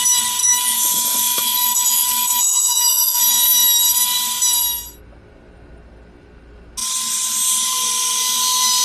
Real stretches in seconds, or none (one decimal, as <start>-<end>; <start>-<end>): 0.0-0.4; 3.2-8.8